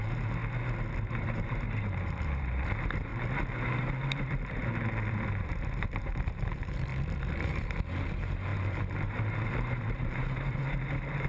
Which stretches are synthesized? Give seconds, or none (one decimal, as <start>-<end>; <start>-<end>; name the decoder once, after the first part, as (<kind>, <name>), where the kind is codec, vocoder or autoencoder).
0.0-0.4 (vocoder, BigVGAN v2); 1.1-3.1; 5.1-6.9; 7.4-11.3